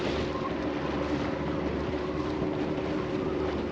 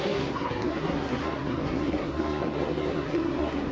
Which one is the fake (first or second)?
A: second